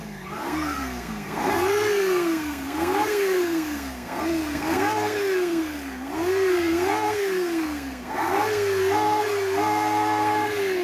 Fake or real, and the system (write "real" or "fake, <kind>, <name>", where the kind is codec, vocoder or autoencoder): fake, codec, SNAC